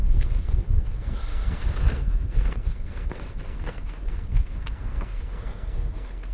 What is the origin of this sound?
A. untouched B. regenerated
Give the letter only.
B